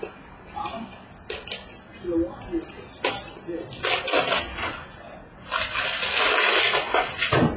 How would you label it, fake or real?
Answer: real